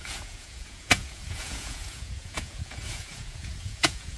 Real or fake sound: fake